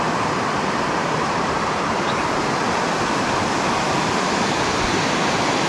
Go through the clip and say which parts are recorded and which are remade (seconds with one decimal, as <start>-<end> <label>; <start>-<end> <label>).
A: 0.0-1.0 recorded; 1.0-2.1 remade; 2.1-5.7 recorded